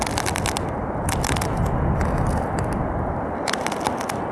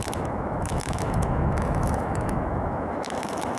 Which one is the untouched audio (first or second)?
first